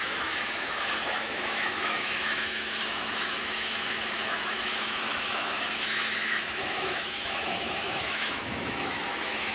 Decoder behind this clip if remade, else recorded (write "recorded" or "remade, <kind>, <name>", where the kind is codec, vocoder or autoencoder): remade, autoencoder, DAC-VAE